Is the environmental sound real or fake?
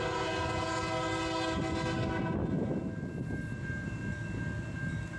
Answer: real